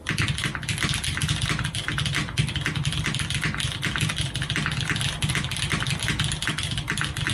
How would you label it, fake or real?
real